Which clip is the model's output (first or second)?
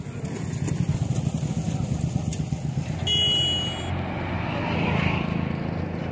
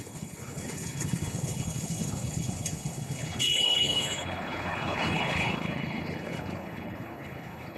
second